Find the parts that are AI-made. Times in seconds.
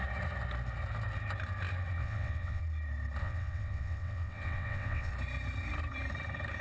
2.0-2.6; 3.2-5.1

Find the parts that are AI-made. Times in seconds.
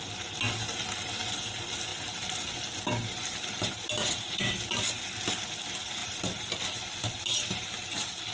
4.0-4.5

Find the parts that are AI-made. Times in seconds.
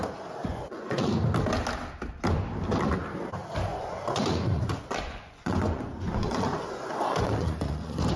0.4-1.1; 3.7-8.2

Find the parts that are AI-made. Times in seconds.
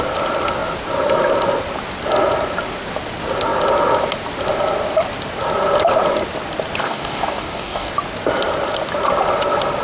6.8-7.9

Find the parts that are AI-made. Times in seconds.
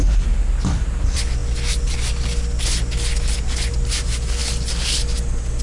none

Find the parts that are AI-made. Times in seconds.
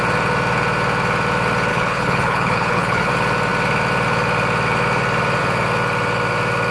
1.7-3.1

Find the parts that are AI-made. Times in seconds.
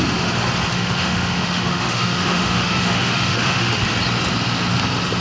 0.7-3.8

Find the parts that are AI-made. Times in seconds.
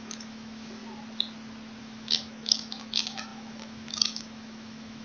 0.0-0.8; 1.8-5.0